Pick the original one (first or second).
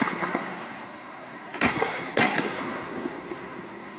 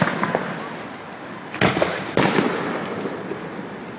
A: second